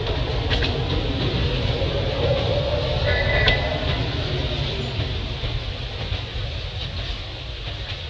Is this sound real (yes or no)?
yes